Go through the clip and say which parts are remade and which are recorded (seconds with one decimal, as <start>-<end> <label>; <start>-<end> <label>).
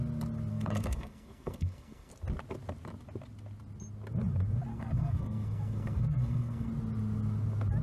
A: 0.0-0.5 recorded; 0.5-2.1 remade; 2.1-4.7 recorded; 4.7-6.7 remade; 6.7-7.8 recorded